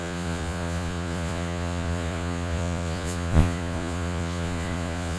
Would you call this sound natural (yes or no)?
no